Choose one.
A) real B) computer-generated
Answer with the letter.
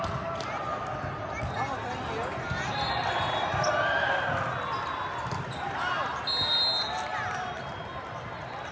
A